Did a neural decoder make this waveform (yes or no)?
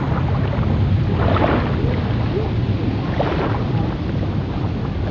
no